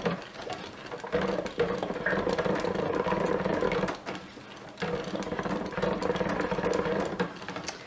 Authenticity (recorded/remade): recorded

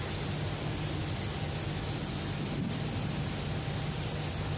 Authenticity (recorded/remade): recorded